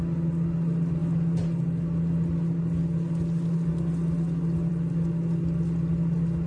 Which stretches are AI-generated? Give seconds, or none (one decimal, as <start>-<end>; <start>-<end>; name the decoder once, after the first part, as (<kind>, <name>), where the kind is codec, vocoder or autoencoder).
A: none